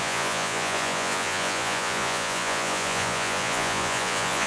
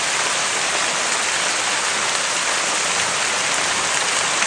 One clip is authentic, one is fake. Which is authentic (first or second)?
second